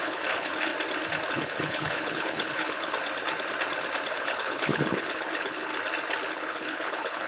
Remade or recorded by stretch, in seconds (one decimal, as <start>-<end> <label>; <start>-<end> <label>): 0.0-0.7 remade; 0.7-1.3 recorded; 1.3-3.0 remade; 3.0-4.1 recorded; 4.1-5.7 remade; 5.7-6.3 recorded; 6.3-7.3 remade